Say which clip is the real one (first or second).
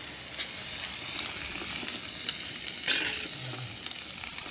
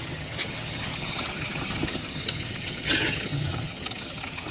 first